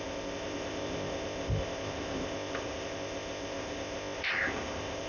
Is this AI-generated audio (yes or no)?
yes